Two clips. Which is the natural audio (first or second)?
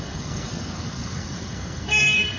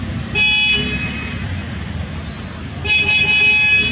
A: second